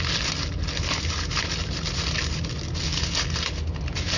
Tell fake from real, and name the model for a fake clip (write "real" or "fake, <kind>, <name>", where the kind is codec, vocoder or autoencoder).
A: real